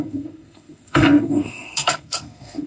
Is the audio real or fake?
fake